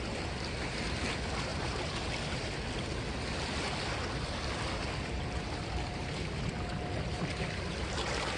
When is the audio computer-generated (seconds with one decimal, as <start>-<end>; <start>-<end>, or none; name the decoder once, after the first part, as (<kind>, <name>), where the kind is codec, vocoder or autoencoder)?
1.5-2.1 (vocoder, BigVGAN v2)